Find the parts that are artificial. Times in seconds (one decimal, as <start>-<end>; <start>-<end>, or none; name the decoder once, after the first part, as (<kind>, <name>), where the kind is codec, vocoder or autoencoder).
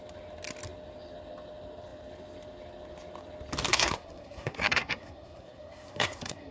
3.7-6.5 (codec, SNAC)